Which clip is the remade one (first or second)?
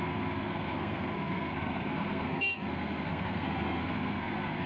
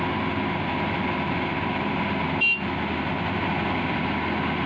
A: first